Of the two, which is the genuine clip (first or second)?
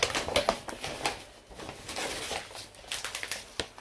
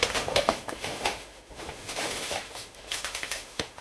first